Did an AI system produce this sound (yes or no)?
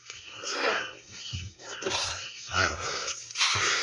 yes